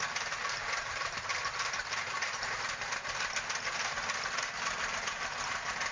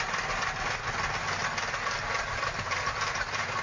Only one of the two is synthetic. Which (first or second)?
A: first